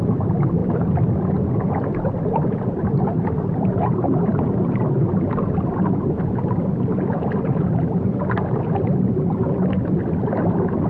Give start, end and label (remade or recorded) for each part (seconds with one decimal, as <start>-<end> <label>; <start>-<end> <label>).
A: 0.0-0.6 remade; 0.6-2.1 recorded; 2.1-10.9 remade